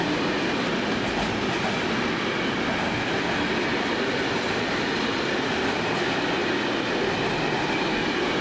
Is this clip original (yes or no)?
yes